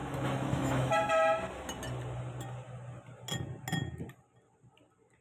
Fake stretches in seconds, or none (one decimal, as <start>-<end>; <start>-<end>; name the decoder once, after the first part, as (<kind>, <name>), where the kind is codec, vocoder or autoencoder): 0.0-1.1 (autoencoder, DAC-VAE)